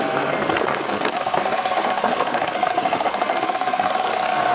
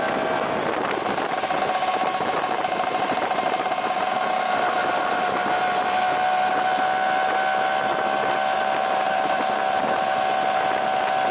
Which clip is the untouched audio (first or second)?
second